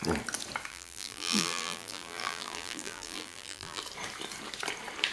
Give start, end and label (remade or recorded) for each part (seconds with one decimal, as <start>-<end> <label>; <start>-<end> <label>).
0.0-0.7 recorded; 0.7-3.8 remade; 3.8-5.1 recorded